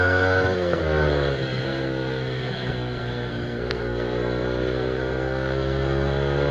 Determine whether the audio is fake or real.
fake